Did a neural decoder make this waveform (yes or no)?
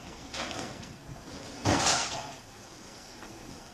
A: yes